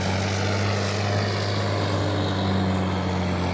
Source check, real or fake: real